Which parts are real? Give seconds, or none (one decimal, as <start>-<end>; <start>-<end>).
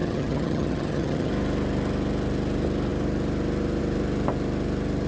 1.3-5.1